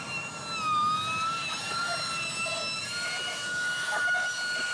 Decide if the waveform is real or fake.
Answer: real